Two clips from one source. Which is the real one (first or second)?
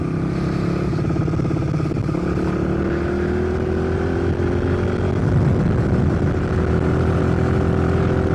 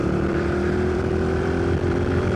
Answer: first